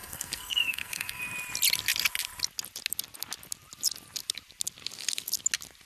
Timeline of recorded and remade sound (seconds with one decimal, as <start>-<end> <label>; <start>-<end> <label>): 0.0-1.2 remade; 1.2-5.9 recorded